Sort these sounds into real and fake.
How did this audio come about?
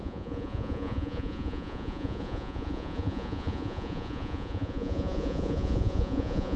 fake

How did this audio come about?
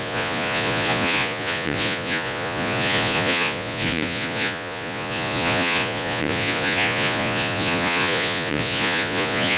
fake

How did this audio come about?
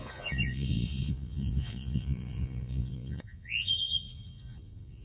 fake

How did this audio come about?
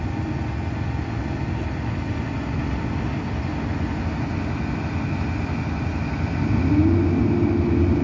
real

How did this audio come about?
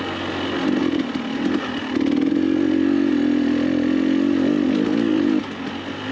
real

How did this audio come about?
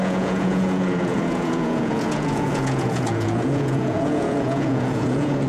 fake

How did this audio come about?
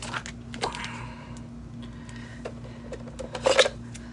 real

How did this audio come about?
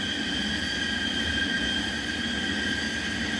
real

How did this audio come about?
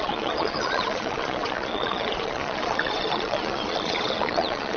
fake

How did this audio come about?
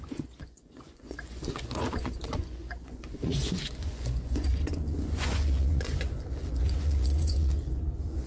fake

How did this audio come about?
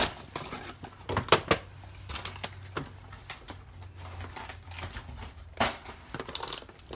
real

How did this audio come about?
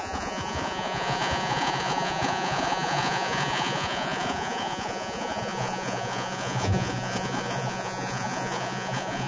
fake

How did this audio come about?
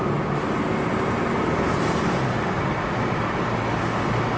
real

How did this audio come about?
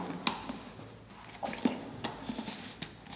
real